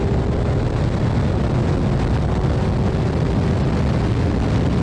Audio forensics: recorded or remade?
recorded